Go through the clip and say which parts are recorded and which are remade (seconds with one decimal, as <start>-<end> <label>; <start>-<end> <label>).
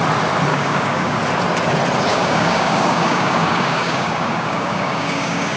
0.0-0.5 recorded; 0.5-1.2 remade; 1.2-2.1 recorded; 2.1-5.6 remade